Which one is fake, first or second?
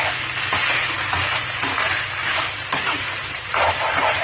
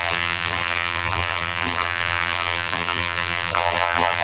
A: second